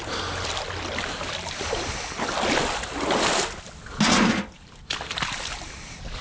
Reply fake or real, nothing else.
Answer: real